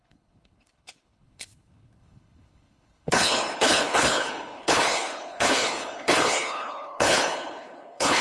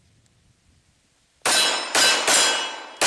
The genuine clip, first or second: second